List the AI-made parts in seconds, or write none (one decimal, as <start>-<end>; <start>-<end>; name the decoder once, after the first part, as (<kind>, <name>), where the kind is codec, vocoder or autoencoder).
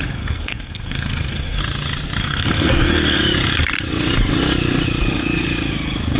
0.0-1.6 (codec, SNAC); 2.2-3.2